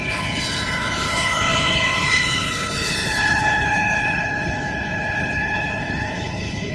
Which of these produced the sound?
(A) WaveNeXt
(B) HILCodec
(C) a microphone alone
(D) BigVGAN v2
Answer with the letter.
B